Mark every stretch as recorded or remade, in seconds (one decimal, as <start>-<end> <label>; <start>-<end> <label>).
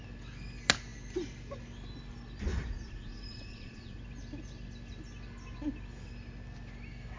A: 0.0-2.5 recorded; 2.5-4.0 remade; 4.0-7.2 recorded